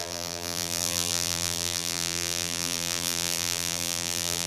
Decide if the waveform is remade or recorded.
remade